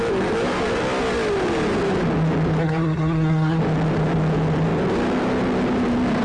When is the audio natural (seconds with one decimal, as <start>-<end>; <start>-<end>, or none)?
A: 0.0-2.6; 3.6-6.2